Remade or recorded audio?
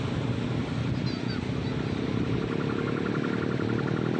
recorded